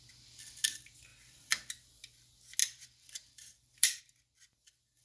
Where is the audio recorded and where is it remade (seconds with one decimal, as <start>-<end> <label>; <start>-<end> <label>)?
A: 0.0-1.1 recorded; 1.1-1.7 remade; 1.7-2.6 recorded; 2.6-4.0 remade; 4.0-5.0 recorded

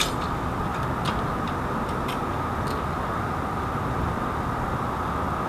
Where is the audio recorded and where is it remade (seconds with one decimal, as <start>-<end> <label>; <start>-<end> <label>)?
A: 0.0-5.5 recorded

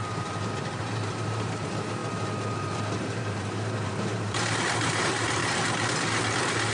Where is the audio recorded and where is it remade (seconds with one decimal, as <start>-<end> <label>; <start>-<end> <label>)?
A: 0.0-2.0 remade; 2.0-2.6 recorded; 2.6-5.4 remade; 5.4-6.7 recorded

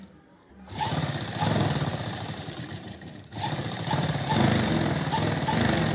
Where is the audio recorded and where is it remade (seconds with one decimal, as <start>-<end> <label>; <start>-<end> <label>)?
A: 0.0-1.9 recorded; 1.9-4.3 remade; 4.3-5.9 recorded

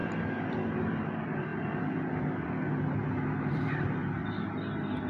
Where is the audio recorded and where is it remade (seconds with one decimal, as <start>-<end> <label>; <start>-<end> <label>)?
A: 0.0-0.5 recorded; 0.5-1.5 remade; 1.5-3.5 recorded; 3.5-4.0 remade; 4.0-5.1 recorded

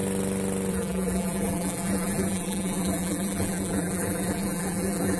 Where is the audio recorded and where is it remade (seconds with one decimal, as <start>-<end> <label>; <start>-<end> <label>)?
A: 0.0-0.7 recorded; 0.7-5.2 remade

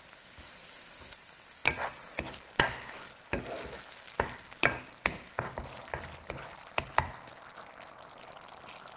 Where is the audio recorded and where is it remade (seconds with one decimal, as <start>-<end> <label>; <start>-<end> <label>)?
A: 0.0-9.0 recorded